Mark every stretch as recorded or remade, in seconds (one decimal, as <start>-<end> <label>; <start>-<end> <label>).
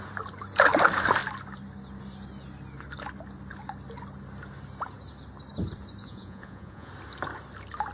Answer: 0.0-6.0 recorded; 6.0-6.9 remade; 6.9-7.9 recorded